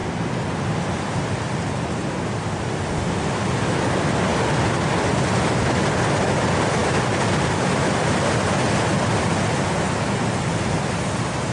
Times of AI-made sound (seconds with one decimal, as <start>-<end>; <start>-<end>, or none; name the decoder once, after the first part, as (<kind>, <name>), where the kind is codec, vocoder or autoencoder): none

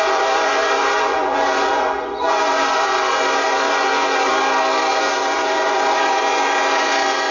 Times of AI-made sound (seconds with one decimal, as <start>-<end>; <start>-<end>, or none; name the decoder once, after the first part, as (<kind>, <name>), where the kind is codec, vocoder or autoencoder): 0.0-4.3 (vocoder, Vocos); 4.9-7.3